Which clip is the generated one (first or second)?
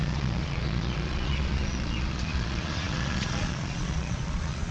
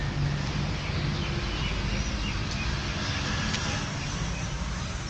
first